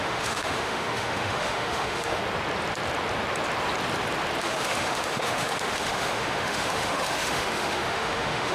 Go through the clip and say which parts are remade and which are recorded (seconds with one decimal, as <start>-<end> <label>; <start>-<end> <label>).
0.0-2.2 remade; 2.2-4.4 recorded; 4.4-8.5 remade